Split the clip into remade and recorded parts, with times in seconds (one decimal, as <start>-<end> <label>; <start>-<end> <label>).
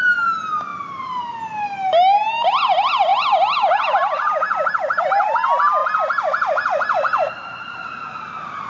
0.0-8.7 recorded